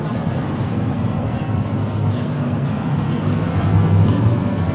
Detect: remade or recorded remade